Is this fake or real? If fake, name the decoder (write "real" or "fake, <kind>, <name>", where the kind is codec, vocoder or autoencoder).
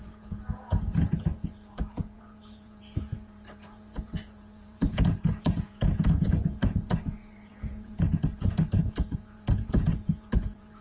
fake, vocoder, Vocos